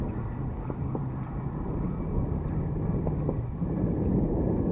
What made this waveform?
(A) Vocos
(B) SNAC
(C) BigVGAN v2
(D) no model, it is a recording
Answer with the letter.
D